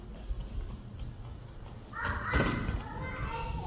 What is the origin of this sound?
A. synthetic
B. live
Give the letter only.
B